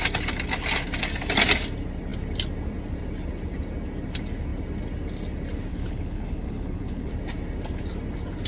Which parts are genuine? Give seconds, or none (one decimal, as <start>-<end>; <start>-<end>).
0.0-5.7; 7.1-8.5